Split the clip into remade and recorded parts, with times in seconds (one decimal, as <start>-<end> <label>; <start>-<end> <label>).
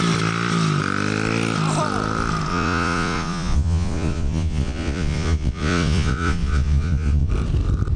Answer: 0.0-2.5 recorded; 2.5-7.3 remade; 7.3-8.0 recorded